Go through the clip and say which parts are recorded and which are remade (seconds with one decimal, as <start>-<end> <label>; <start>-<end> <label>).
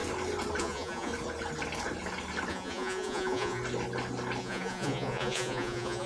0.0-0.6 recorded; 0.6-1.1 remade; 1.1-2.5 recorded; 2.5-3.6 remade; 3.6-4.4 recorded; 4.4-6.1 remade